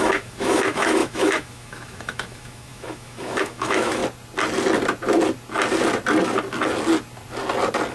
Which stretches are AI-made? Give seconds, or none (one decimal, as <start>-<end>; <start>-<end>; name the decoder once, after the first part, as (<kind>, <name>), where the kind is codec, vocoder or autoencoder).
0.0-4.0 (autoencoder, DAC-VAE)